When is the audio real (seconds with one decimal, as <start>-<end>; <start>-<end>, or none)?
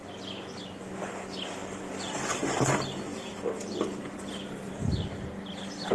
0.0-1.6; 4.7-5.9